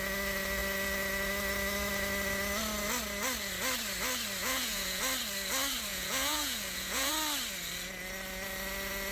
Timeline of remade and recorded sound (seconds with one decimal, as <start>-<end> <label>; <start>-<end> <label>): 0.0-4.4 recorded; 4.4-5.0 remade; 5.0-5.9 recorded; 5.9-7.1 remade; 7.1-9.1 recorded